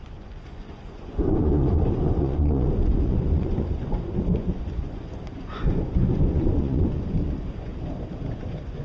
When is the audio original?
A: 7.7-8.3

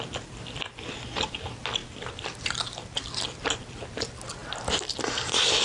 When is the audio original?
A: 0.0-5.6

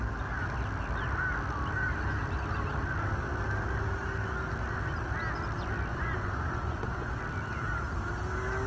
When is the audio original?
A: 0.0-5.9; 7.2-8.7

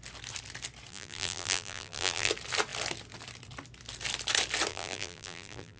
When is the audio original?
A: 0.0-0.9; 2.3-4.7

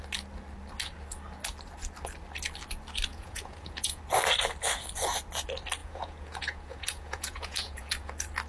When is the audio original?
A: 0.0-3.1; 4.0-5.8; 8.1-8.5